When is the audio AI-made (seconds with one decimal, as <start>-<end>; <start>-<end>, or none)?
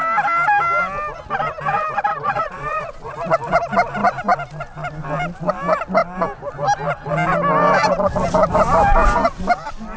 2.1-3.1